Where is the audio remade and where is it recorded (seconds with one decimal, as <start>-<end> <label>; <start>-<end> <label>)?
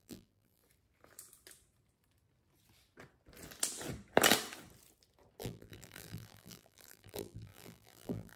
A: 0.0-0.6 remade; 0.6-5.4 recorded; 5.4-8.4 remade